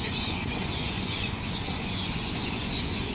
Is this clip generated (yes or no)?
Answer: yes